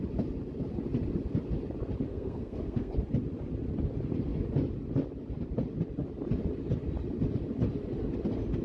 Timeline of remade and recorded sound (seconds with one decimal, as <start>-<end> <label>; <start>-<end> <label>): 0.0-2.1 recorded; 2.1-2.9 remade; 2.9-8.6 recorded